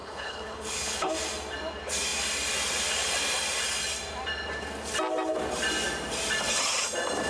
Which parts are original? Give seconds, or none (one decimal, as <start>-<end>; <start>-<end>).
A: 1.1-7.3